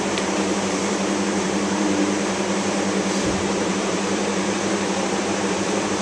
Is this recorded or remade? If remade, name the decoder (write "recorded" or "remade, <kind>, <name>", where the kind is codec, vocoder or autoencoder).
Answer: remade, vocoder, BigVGAN v2